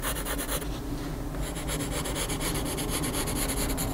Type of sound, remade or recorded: recorded